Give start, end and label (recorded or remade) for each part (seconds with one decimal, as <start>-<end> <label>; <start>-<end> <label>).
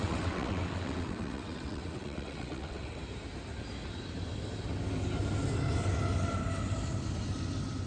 0.0-3.0 remade; 3.0-7.9 recorded